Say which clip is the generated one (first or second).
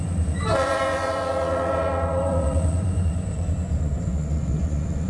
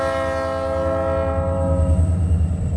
first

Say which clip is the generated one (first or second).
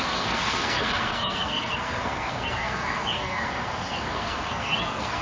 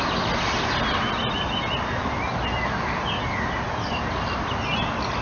first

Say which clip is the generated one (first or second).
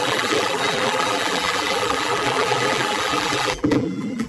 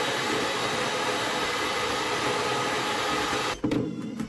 first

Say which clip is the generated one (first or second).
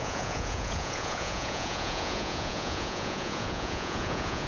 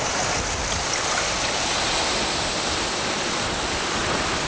first